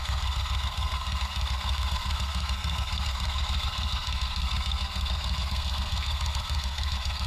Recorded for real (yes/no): no